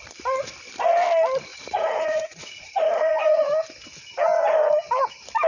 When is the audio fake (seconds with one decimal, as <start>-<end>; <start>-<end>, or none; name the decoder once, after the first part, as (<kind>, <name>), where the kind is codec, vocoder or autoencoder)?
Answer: 1.5-3.5 (vocoder, Vocos)